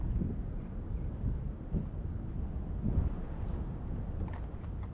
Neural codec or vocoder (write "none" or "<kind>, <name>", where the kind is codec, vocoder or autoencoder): none